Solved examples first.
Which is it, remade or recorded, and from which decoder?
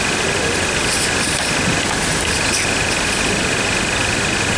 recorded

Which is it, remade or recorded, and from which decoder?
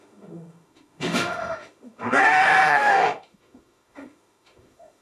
remade, autoencoder, DAC-VAE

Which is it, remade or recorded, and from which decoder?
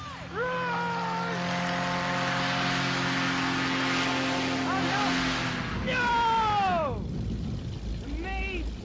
recorded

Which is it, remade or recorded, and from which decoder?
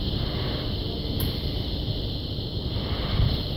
recorded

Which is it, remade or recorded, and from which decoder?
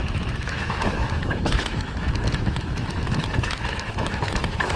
remade, autoencoder, DAC-VAE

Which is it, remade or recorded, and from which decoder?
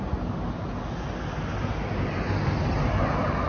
recorded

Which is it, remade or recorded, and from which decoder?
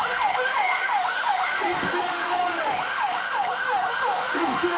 remade, autoencoder, DAC-VAE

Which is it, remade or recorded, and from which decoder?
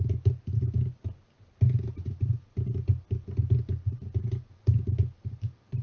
recorded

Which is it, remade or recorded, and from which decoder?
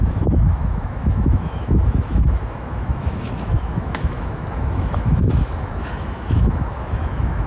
remade, autoencoder, DAC-VAE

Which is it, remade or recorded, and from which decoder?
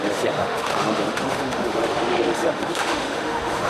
remade, autoencoder, DAC-VAE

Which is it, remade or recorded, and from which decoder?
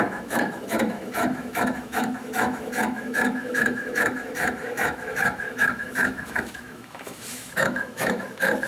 remade, autoencoder, DAC-VAE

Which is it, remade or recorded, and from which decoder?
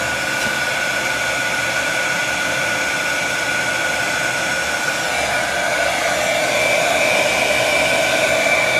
recorded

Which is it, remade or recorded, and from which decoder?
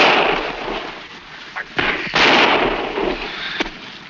recorded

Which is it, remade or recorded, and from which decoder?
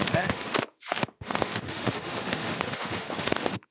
remade, autoencoder, DAC-VAE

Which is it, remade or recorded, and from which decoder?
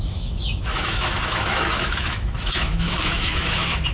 remade, autoencoder, DAC-VAE